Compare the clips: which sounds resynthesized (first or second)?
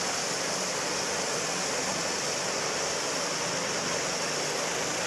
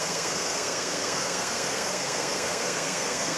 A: second